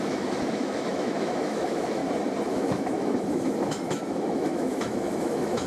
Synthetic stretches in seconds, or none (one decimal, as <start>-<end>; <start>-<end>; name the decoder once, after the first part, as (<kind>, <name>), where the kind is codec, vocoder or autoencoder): 0.0-2.0 (autoencoder, DAC-VAE); 2.5-5.7